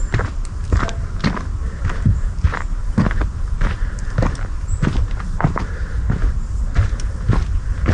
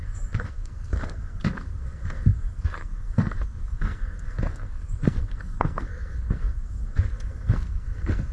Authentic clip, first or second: first